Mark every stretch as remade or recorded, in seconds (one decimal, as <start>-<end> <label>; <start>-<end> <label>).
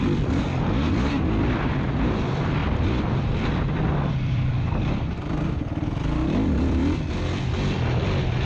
0.0-6.8 remade; 6.8-8.5 recorded